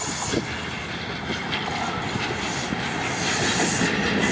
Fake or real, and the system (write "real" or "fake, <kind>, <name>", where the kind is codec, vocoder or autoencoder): real